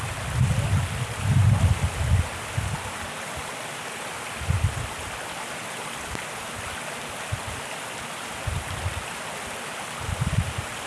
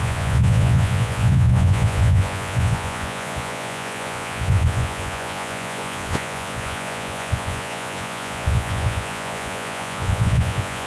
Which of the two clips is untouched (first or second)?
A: first